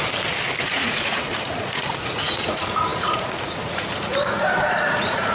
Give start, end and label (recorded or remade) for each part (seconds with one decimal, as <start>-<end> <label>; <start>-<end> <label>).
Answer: 0.0-0.6 recorded; 0.6-5.3 remade